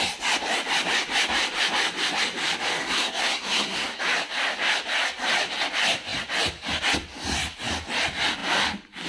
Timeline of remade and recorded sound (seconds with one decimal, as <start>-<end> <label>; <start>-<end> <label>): 0.0-2.8 recorded; 2.8-4.0 remade; 4.0-9.1 recorded